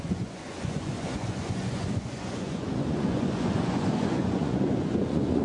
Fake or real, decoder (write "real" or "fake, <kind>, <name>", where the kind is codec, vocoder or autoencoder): fake, vocoder, Vocos